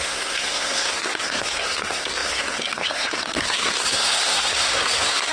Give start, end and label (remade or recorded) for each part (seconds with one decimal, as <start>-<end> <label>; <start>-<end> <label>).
0.0-5.3 remade